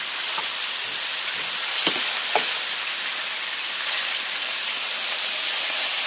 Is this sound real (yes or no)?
yes